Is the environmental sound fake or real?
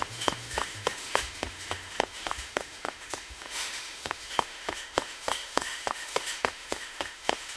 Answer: fake